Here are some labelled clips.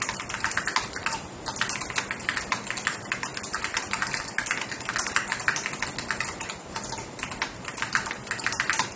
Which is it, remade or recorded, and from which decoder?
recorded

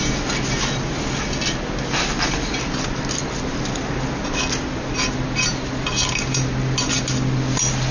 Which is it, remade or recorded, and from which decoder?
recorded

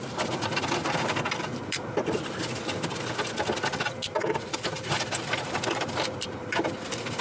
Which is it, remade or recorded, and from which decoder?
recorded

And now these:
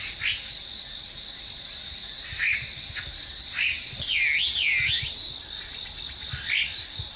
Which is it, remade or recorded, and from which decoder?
recorded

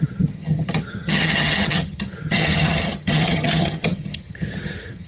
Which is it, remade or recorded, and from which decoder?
remade, vocoder, HiFi-GAN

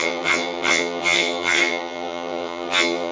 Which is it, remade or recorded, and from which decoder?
remade, vocoder, HiFi-GAN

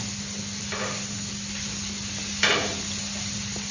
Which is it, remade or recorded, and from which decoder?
recorded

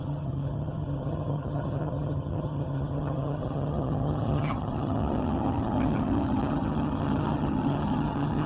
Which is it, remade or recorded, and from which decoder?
remade, vocoder, HiFi-GAN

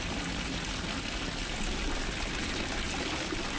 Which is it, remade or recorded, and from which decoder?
recorded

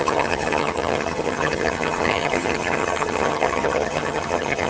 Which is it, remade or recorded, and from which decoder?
remade, vocoder, HiFi-GAN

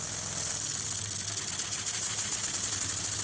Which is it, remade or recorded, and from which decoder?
recorded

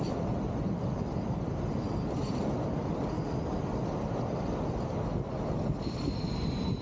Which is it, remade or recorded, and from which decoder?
recorded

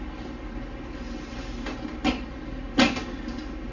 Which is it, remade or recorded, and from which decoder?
recorded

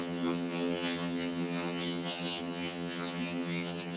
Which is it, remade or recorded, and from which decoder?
remade, vocoder, HiFi-GAN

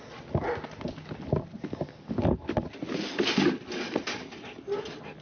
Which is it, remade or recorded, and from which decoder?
recorded